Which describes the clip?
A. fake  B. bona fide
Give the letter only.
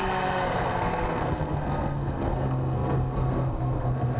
A